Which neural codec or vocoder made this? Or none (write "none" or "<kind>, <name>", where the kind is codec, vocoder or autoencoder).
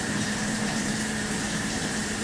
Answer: vocoder, BigVGAN v2